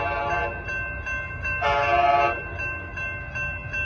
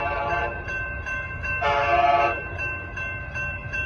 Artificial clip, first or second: second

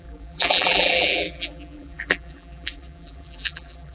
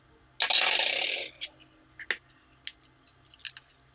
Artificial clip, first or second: first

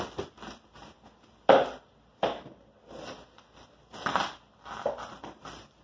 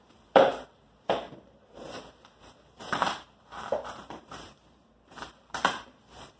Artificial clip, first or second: second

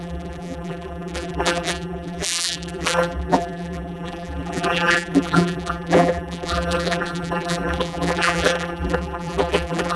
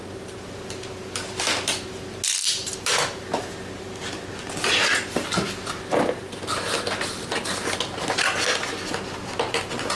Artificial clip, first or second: first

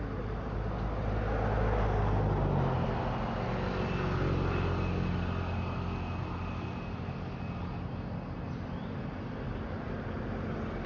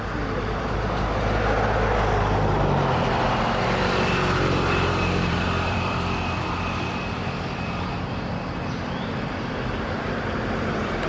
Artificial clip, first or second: second